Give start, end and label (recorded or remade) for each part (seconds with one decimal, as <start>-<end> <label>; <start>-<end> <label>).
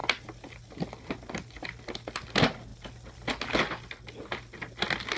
0.0-5.2 recorded